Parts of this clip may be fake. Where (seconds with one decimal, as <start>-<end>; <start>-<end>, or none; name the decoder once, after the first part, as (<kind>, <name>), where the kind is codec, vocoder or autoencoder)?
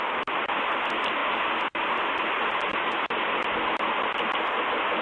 2.7-4.3 (vocoder, BigVGAN v2)